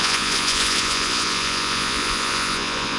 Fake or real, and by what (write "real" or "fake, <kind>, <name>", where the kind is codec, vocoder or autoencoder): fake, vocoder, Vocos